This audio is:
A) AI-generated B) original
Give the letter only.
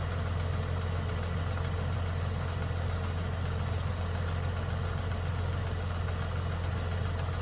B